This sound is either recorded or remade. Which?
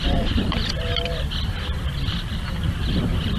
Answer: remade